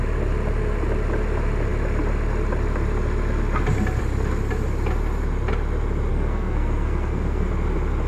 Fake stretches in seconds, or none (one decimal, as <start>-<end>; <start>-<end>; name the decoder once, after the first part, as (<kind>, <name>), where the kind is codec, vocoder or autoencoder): 6.1-7.5 (codec, SNAC)